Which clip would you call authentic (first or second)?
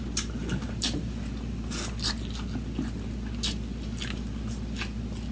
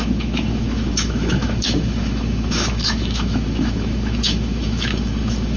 first